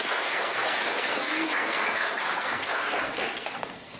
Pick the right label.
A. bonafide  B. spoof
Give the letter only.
B